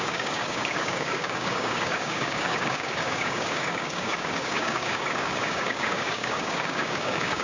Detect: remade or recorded remade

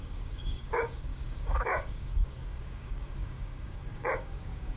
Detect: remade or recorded remade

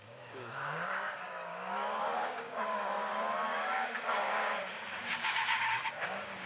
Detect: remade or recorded remade